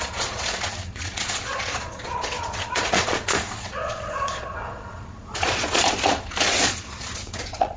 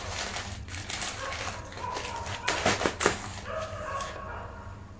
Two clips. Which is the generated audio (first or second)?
first